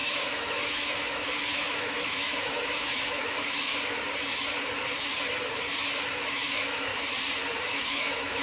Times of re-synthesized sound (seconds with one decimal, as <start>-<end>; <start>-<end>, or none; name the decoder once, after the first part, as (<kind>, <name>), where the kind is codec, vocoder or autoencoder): 0.0-3.7 (autoencoder, DAC-VAE); 6.3-6.9; 7.6-8.4